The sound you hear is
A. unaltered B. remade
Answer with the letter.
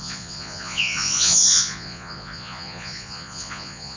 B